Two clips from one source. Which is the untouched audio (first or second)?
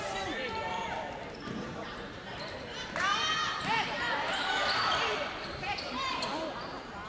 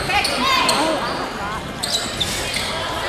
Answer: second